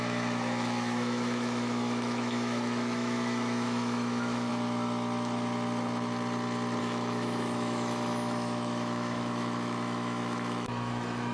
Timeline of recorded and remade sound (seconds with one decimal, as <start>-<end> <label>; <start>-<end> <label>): 0.0-4.5 remade; 4.5-6.8 recorded; 6.8-11.3 remade